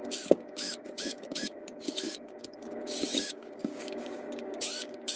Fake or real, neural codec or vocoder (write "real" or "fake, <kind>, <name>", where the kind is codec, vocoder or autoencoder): fake, codec, DAC